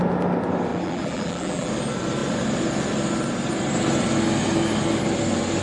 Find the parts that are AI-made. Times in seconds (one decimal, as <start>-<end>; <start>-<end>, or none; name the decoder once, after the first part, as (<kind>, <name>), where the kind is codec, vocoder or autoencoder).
0.7-1.7 (vocoder, BigVGAN v2)